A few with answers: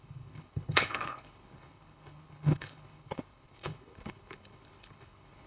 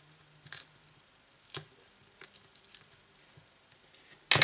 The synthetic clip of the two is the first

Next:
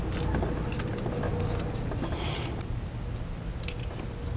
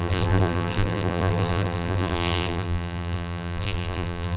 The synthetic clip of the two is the second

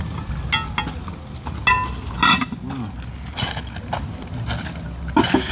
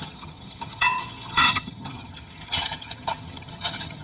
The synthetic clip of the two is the second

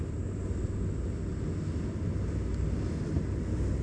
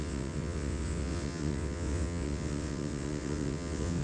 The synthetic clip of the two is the second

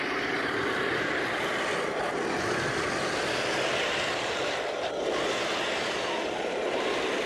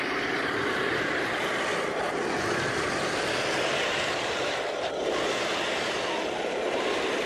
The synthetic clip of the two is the second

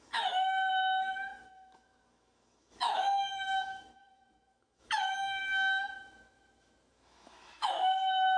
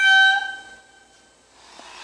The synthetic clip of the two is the first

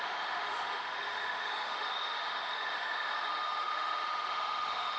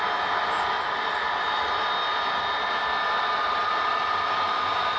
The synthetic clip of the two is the first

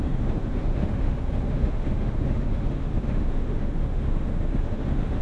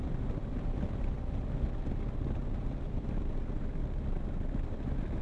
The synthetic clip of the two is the first